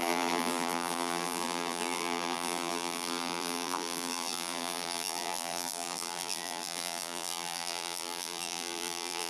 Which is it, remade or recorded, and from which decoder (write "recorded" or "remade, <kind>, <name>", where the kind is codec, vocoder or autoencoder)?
remade, vocoder, BigVGAN v2